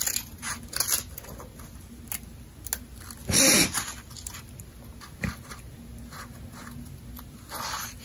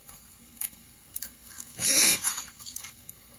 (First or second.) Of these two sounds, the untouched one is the first